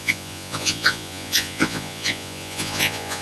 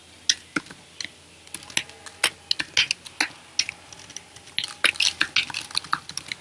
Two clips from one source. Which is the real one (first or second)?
second